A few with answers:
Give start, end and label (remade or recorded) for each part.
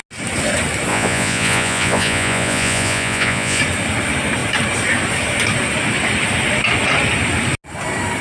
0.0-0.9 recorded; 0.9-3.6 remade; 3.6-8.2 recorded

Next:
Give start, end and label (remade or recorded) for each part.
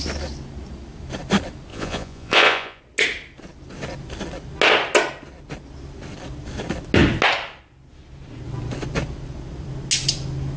0.0-1.7 recorded; 1.7-2.8 remade; 2.8-10.6 recorded